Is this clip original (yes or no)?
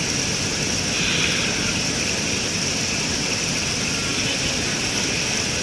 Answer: yes